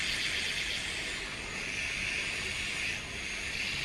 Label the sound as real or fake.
real